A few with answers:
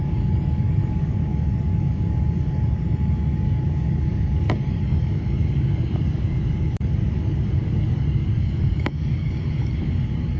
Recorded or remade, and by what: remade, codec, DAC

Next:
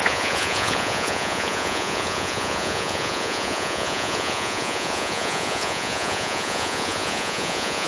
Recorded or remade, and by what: remade, vocoder, Vocos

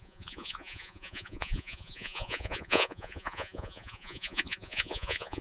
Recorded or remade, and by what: remade, vocoder, Vocos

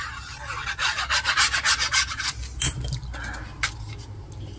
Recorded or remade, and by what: recorded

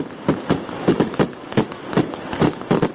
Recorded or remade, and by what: recorded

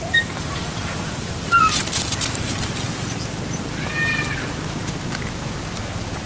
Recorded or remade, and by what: recorded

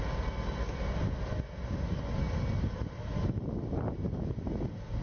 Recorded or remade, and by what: recorded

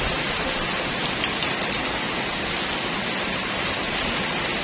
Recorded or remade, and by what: recorded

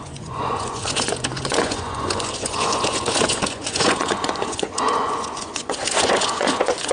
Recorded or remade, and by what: remade, vocoder, Vocos